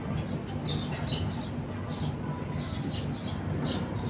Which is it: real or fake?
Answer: real